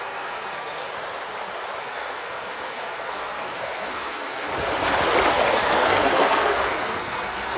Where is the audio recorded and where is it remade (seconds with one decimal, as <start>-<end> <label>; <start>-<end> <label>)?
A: 0.0-0.9 remade; 0.9-1.8 recorded; 1.8-4.5 remade; 4.5-5.3 recorded; 5.3-7.6 remade